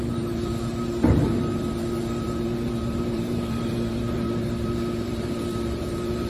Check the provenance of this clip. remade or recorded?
remade